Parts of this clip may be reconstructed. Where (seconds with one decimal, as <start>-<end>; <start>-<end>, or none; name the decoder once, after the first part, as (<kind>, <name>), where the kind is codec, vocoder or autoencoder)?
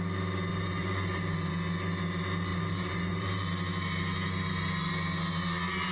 0.5-1.5 (vocoder, BigVGAN v2); 2.5-3.5